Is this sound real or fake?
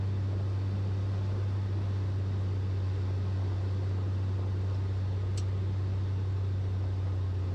real